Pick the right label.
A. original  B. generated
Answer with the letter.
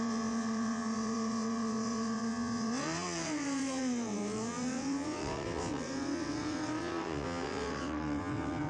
B